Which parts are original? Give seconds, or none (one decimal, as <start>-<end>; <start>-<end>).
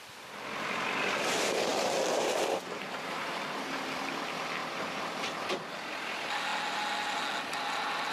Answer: 1.7-2.4; 6.5-8.1